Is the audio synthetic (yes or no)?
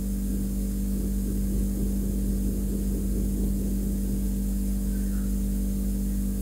no